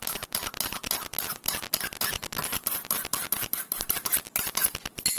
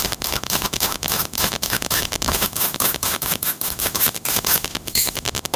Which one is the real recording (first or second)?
first